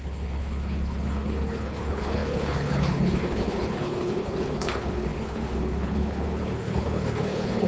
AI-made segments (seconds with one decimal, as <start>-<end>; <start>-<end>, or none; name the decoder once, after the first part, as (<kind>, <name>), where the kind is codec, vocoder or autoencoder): 0.0-7.7 (codec, HILCodec)